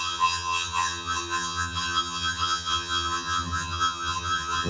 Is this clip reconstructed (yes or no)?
yes